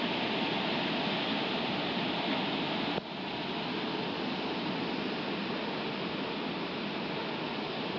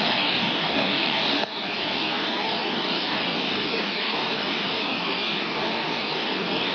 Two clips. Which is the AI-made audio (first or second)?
second